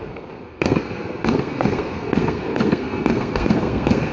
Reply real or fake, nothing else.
fake